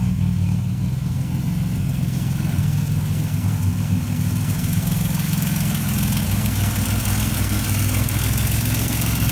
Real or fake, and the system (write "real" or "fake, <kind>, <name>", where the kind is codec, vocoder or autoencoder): fake, codec, SNAC